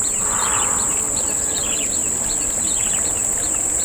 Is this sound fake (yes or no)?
no